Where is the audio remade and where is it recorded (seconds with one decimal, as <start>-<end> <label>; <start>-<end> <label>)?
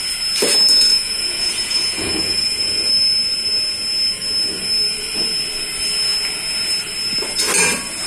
0.0-0.9 recorded; 0.9-2.9 remade; 2.9-8.1 recorded